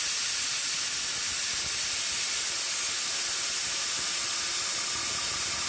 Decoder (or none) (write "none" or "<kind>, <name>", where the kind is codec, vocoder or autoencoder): none